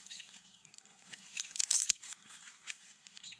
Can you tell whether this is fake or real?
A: fake